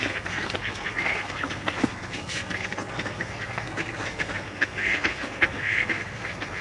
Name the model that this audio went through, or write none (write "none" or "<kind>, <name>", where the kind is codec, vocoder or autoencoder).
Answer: codec, SNAC